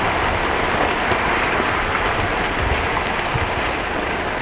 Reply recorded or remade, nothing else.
recorded